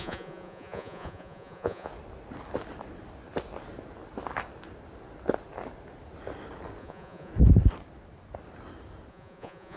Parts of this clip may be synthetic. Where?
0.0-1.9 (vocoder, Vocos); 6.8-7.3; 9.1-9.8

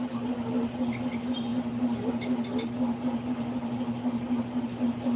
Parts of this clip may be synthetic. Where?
none

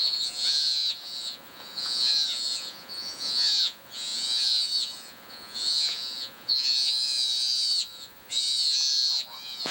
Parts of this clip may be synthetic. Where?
0.0-9.7 (vocoder, Vocos)